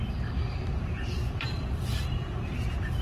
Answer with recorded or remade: remade